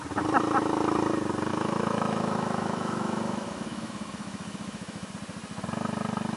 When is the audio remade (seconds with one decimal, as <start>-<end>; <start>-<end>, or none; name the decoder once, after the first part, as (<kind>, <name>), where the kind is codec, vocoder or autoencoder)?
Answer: 1.5-5.1 (autoencoder, DAC-VAE)